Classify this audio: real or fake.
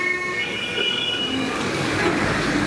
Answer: fake